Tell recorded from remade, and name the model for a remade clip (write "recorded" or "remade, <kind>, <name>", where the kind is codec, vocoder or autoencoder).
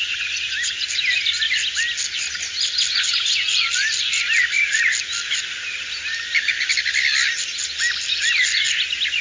recorded